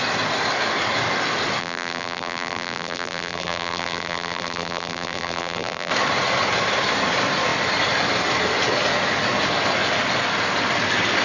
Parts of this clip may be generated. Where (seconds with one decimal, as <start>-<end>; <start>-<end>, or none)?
1.6-5.9